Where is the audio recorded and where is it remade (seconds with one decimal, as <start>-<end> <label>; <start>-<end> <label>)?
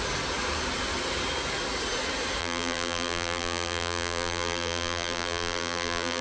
0.0-2.4 recorded; 2.4-6.2 remade